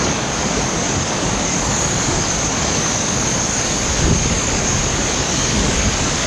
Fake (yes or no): yes